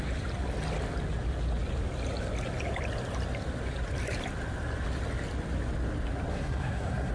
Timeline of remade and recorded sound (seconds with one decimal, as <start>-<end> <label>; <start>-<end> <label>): 0.0-6.3 recorded; 6.3-7.1 remade